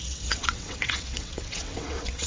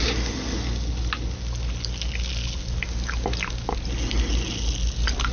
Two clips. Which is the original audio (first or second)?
second